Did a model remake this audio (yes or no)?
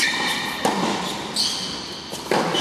no